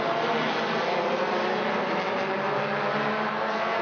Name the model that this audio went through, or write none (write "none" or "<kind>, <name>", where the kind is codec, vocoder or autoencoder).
none